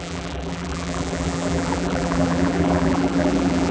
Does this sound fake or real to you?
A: fake